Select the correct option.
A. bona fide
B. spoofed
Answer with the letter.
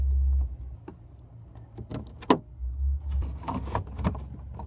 A